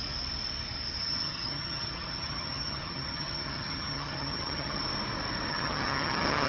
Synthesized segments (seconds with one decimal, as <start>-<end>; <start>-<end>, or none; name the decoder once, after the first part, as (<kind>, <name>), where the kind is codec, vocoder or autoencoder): 1.0-4.8 (vocoder, HiFi-GAN); 5.5-6.5